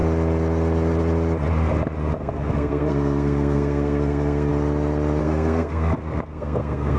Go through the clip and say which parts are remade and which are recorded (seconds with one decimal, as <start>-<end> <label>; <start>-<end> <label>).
0.0-2.2 recorded; 2.2-4.5 remade; 4.5-5.2 recorded; 5.2-7.0 remade